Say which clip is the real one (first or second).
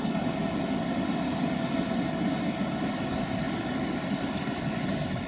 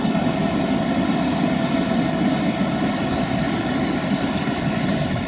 first